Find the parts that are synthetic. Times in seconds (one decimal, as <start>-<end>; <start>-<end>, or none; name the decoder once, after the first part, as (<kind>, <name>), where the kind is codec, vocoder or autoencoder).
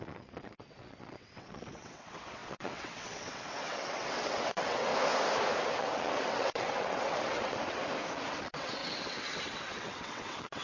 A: 0.0-4.9 (vocoder, WaveNeXt); 5.6-7.8; 8.3-10.6